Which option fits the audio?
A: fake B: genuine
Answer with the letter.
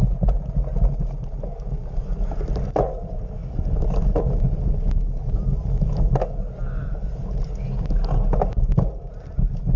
B